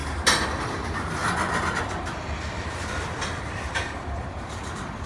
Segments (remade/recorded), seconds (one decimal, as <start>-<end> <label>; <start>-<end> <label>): 0.0-0.6 recorded; 0.6-1.2 remade; 1.2-1.8 recorded; 1.8-5.1 remade